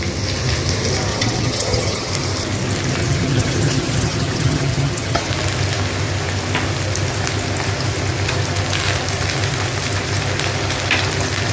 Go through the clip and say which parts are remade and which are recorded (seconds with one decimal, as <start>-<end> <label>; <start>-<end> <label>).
0.0-1.1 recorded; 1.1-2.1 remade; 2.1-3.0 recorded; 3.0-5.3 remade; 5.3-11.5 recorded